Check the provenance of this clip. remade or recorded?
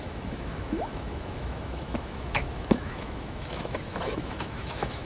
remade